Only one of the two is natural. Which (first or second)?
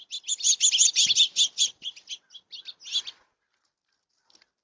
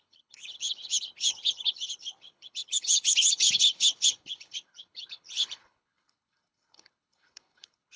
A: first